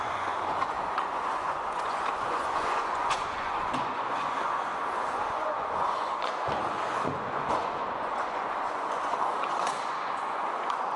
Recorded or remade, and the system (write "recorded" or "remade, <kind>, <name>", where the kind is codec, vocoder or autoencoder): remade, vocoder, Vocos